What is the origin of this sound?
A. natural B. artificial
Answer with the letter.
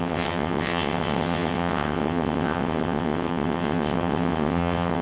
B